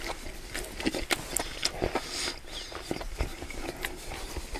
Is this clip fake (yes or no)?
no